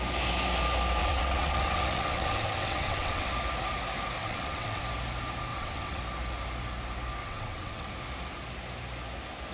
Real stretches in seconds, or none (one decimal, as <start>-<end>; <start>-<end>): 0.0-1.0; 3.3-4.2; 4.8-5.5; 6.0-7.2; 7.9-9.5